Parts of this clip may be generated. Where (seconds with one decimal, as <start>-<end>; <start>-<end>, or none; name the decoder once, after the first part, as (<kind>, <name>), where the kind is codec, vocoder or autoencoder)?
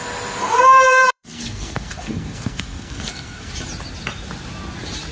0.4-3.5 (codec, SNAC)